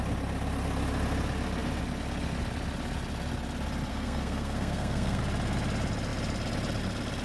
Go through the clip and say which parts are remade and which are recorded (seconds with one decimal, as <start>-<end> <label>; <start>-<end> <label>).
0.0-3.9 recorded; 3.9-5.2 remade; 5.2-7.2 recorded